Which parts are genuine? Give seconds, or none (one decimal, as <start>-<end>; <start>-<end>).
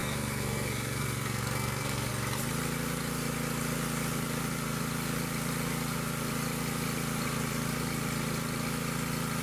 2.1-9.4